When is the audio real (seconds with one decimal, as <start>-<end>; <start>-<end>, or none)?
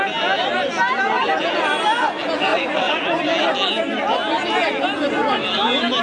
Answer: 0.0-2.5; 3.3-6.0